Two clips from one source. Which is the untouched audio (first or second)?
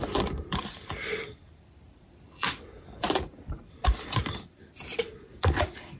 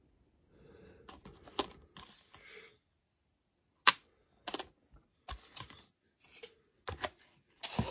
second